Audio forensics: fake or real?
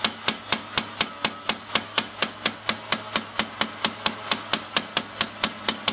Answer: real